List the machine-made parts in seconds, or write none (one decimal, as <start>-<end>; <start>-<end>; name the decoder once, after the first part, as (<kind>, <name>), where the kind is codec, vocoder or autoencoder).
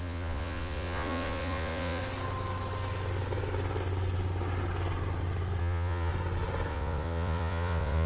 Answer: 0.0-2.0 (vocoder, Vocos); 5.6-6.1; 6.7-8.1